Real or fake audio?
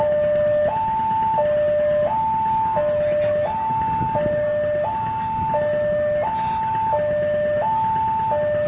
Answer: real